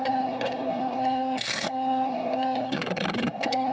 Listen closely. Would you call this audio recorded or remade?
remade